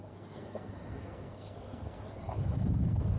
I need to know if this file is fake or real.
fake